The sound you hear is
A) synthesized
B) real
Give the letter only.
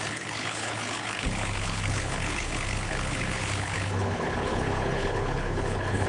A